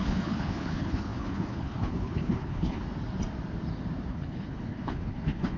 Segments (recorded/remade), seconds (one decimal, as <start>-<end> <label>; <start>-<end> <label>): 0.0-2.8 remade; 2.8-4.1 recorded; 4.1-5.6 remade